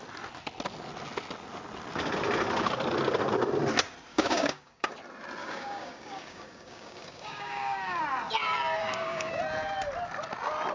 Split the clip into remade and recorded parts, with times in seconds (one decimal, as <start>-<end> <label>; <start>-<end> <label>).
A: 0.0-4.1 recorded; 4.1-4.9 remade; 4.9-5.4 recorded; 5.4-8.0 remade; 8.0-8.8 recorded; 8.8-9.4 remade; 9.4-10.7 recorded